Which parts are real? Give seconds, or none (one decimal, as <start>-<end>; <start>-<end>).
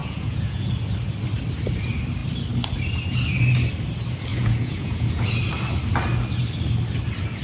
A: 0.7-4.3; 5.4-7.4